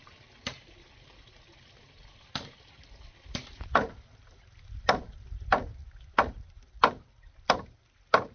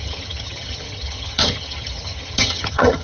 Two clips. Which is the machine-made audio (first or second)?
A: second